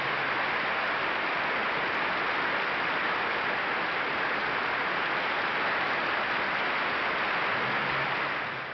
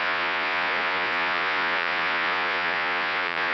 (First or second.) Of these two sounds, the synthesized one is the second